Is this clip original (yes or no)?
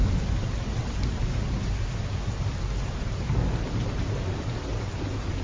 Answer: yes